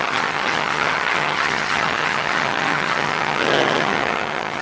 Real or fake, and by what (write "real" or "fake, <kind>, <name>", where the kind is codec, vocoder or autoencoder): fake, vocoder, HiFi-GAN